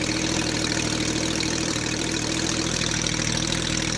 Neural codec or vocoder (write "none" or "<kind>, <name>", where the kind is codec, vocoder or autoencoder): vocoder, BigVGAN v2